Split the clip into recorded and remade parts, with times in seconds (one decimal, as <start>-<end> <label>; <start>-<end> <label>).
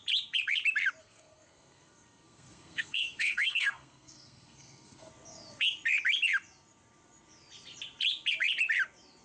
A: 0.0-1.0 recorded; 1.0-5.1 remade; 5.1-9.2 recorded